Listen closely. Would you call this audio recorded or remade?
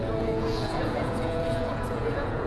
remade